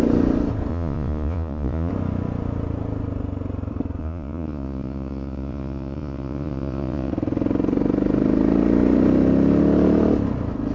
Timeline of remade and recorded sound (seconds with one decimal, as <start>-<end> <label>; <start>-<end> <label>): 0.0-0.7 recorded; 0.7-1.9 remade; 1.9-4.0 recorded; 4.0-7.1 remade; 7.1-10.7 recorded